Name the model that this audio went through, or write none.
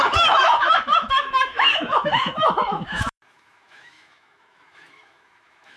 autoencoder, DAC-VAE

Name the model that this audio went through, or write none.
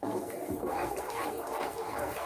codec, SNAC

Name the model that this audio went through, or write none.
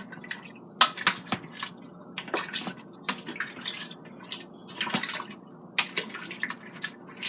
none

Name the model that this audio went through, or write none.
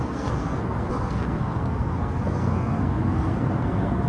codec, SNAC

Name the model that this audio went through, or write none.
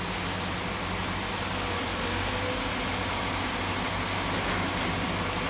none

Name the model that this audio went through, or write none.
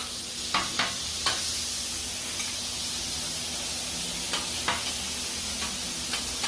none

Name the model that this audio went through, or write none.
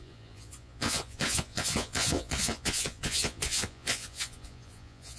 vocoder, Vocos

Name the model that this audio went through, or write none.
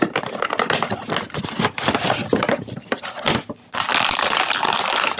none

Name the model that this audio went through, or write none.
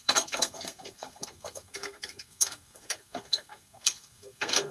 codec, SNAC